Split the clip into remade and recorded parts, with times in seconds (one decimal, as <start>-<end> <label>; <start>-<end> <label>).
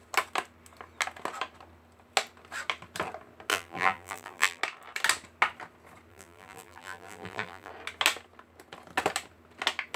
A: 0.0-3.5 recorded; 3.5-4.6 remade; 4.6-6.1 recorded; 6.1-7.7 remade; 7.7-10.0 recorded